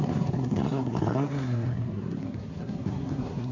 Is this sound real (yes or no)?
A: no